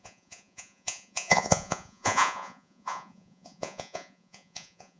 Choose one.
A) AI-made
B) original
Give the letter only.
A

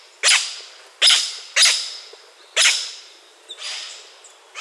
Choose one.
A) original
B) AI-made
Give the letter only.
A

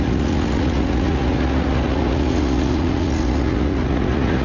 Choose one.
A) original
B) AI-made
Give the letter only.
B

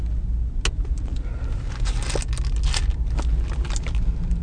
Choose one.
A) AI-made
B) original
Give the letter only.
B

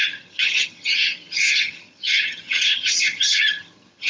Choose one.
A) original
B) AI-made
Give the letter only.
B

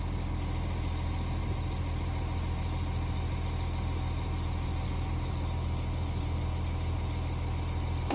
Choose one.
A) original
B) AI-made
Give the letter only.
A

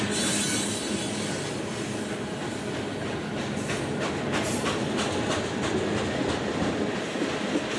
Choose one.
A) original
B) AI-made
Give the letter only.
A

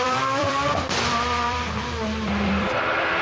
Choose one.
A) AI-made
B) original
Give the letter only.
A